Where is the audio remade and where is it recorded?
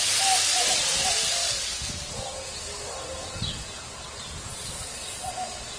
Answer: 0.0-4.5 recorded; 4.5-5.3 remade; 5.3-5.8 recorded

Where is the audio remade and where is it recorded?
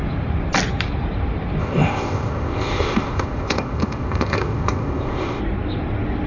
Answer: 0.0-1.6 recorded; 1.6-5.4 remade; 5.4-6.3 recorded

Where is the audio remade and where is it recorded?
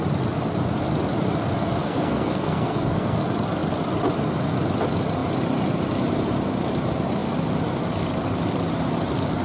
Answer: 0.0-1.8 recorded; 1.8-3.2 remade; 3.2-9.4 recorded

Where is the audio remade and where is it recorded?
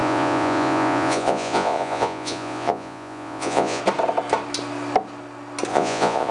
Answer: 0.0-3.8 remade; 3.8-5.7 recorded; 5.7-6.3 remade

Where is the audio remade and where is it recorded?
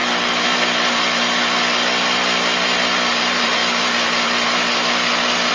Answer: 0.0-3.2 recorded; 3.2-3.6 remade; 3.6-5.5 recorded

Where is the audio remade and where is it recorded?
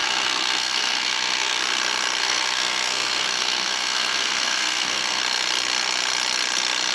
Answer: 0.0-1.6 remade; 1.6-2.2 recorded; 2.2-5.2 remade; 5.2-6.9 recorded